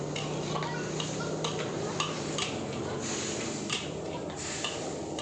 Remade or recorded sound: recorded